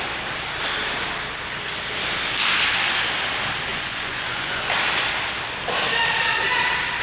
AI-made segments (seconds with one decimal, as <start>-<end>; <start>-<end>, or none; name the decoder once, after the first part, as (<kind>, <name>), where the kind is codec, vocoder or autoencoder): 3.7-4.7 (vocoder, Vocos)